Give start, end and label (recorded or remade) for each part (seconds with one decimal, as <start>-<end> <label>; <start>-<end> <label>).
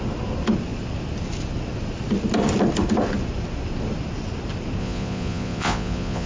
0.0-4.8 recorded; 4.8-6.3 remade